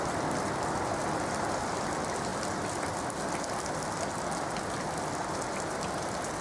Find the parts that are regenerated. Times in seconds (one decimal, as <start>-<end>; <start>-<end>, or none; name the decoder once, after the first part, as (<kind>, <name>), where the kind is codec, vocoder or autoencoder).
none